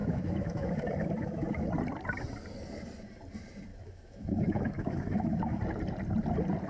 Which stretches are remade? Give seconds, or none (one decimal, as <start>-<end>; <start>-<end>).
0.0-1.7; 3.7-5.6